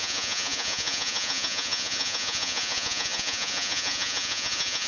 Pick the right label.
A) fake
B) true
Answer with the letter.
A